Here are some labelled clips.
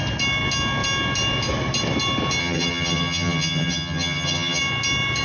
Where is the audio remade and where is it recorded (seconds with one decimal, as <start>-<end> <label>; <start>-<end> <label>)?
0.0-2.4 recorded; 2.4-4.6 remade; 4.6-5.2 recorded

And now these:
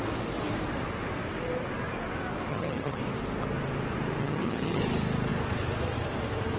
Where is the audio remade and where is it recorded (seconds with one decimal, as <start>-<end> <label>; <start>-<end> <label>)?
0.0-2.5 recorded; 2.5-3.0 remade; 3.0-4.2 recorded; 4.2-4.8 remade; 4.8-6.6 recorded

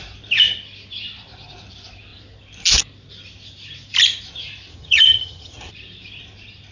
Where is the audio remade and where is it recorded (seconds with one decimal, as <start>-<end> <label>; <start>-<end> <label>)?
0.0-4.7 recorded; 4.7-5.7 remade; 5.7-6.7 recorded

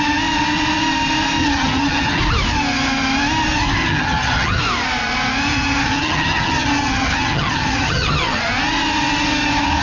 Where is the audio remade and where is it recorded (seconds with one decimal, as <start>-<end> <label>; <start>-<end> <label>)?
0.0-1.4 recorded; 1.4-2.2 remade; 2.2-3.8 recorded; 3.8-4.6 remade; 4.6-5.5 recorded; 5.5-8.4 remade; 8.4-9.8 recorded